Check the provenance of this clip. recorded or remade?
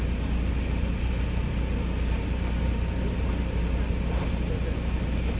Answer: recorded